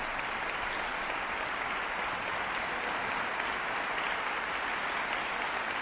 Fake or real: real